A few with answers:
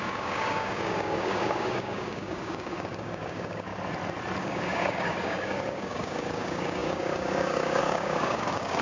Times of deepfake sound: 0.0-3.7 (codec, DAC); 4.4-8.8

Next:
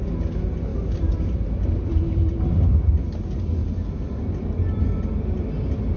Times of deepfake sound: 0.7-2.0 (vocoder, BigVGAN v2); 3.6-4.2

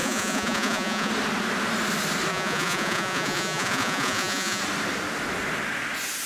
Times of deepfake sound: 0.0-1.1 (vocoder, Vocos); 2.3-4.6

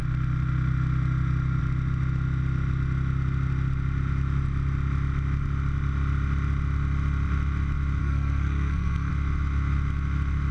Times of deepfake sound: 8.0-9.1 (codec, SNAC)

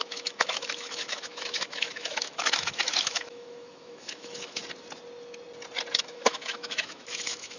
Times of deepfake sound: 0.0-4.6 (autoencoder, DAC-VAE); 6.0-7.6

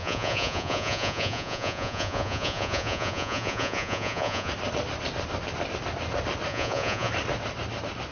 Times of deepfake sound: 0.0-4.5 (vocoder, Vocos); 6.5-7.1

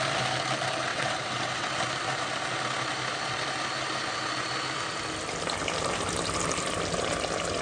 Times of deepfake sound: 0.9-1.7 (vocoder, WaveNeXt)

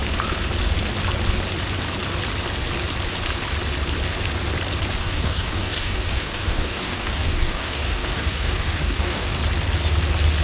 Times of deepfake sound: 5.0-9.4 (codec, DAC)